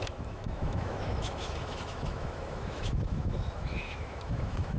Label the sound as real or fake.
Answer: fake